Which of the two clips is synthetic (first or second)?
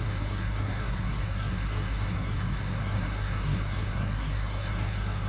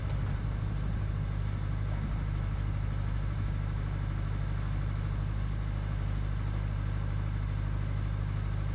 first